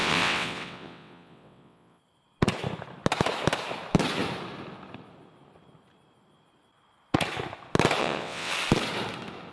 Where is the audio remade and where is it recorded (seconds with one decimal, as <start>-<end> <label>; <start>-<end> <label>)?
0.0-2.0 remade; 2.0-8.0 recorded; 8.0-8.5 remade; 8.5-9.5 recorded